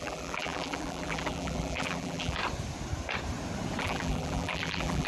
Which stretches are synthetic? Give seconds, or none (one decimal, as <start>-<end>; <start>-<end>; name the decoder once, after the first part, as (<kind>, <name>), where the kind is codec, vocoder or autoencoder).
0.0-2.4 (vocoder, BigVGAN v2); 3.8-5.1